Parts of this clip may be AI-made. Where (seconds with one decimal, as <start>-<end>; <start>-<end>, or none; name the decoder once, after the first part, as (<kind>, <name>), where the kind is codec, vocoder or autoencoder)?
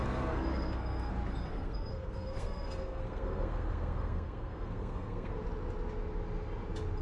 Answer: 0.0-1.1 (codec, SNAC); 1.5-5.4